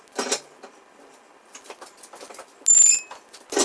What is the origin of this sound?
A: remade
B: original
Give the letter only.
B